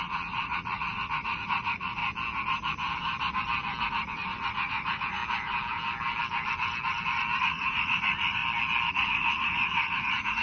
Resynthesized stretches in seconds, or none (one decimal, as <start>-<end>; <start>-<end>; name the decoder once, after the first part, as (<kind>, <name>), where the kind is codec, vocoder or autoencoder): 0.0-2.0 (vocoder, Vocos); 3.9-5.2; 7.4-8.4; 8.9-10.4